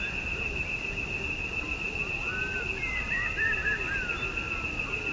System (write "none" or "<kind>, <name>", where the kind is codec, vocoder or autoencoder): none